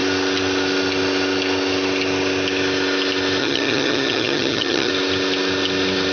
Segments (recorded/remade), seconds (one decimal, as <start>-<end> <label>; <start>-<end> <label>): 0.0-3.4 recorded; 3.4-4.9 remade; 4.9-6.1 recorded